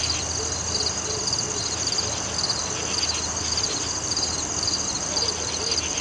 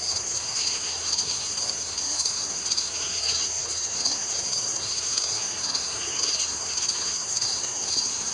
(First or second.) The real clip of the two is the first